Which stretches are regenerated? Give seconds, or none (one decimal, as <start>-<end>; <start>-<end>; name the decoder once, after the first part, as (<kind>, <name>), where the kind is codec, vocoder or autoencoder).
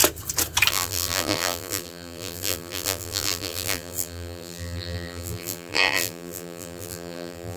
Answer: 0.7-7.6 (vocoder, BigVGAN v2)